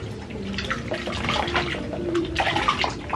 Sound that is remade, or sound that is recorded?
recorded